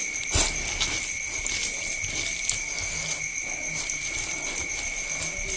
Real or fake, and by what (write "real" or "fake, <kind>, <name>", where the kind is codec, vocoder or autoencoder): real